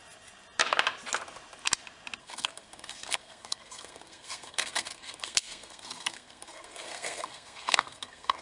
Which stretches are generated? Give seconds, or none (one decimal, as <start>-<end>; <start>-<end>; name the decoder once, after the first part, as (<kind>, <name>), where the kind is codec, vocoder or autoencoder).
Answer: 2.2-8.4 (codec, SNAC)